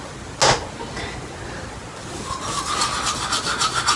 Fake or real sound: real